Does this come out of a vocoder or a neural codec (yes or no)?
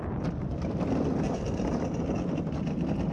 yes